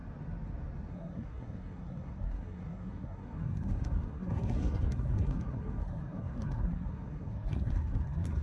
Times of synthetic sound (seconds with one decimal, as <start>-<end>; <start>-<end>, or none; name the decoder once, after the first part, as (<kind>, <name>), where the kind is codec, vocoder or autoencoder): 0.9-8.4 (codec, SNAC)